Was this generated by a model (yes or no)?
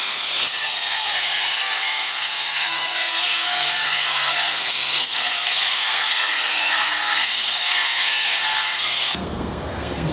yes